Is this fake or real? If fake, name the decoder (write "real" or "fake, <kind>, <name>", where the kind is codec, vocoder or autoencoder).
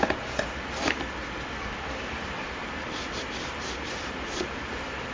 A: real